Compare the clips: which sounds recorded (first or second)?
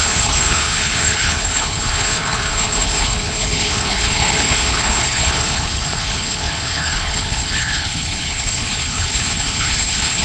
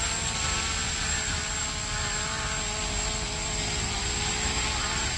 second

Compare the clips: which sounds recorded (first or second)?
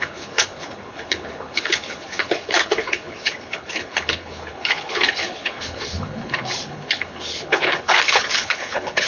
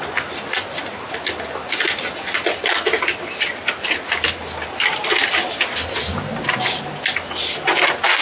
second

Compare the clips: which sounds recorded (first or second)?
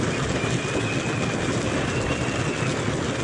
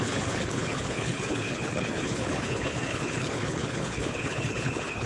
first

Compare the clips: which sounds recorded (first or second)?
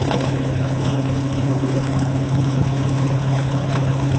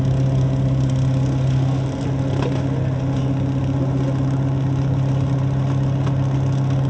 second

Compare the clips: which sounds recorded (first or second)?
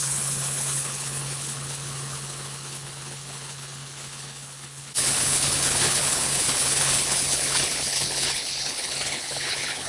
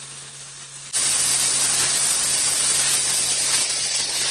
second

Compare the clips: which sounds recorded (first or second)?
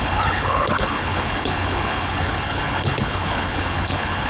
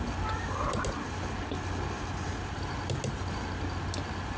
second